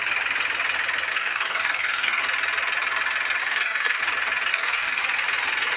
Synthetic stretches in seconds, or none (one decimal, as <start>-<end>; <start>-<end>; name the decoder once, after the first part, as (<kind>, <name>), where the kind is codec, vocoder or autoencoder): 1.1-2.2 (codec, DAC); 3.4-4.0; 4.5-5.0